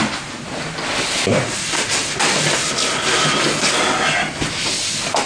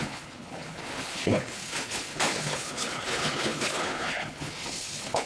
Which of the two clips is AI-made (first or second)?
second